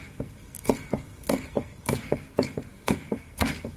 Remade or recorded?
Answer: remade